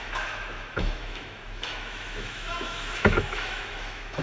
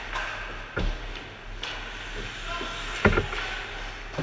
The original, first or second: second